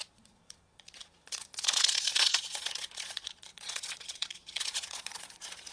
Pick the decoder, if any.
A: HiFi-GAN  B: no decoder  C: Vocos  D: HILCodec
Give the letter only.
C